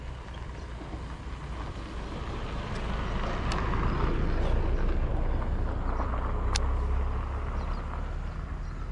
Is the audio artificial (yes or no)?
no